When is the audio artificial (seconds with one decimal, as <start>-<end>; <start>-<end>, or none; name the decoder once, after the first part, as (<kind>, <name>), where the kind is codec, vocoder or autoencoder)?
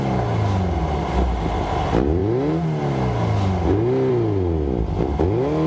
none